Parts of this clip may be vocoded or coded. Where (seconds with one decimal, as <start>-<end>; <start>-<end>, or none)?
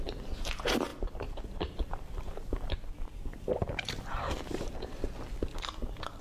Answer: 0.9-2.7; 3.3-4.7